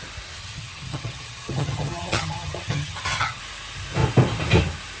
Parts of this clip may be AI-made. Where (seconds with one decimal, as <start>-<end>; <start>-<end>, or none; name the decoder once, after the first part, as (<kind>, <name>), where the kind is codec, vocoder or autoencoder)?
0.4-3.4 (vocoder, HiFi-GAN)